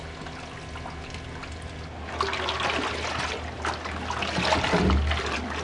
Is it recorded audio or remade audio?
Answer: recorded